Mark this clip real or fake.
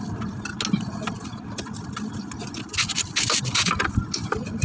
real